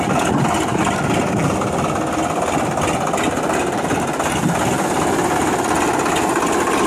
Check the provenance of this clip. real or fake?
real